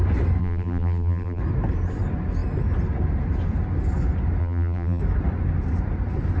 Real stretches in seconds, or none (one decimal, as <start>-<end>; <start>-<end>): 0.0-0.4; 1.4-4.4; 5.0-6.4